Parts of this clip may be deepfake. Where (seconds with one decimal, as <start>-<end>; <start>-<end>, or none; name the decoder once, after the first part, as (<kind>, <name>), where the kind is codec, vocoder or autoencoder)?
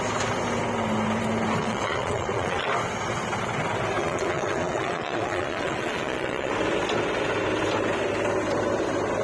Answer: 1.6-2.7 (vocoder, Vocos); 4.0-6.5